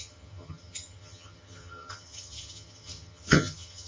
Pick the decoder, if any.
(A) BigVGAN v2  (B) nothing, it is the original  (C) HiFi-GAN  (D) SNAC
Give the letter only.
C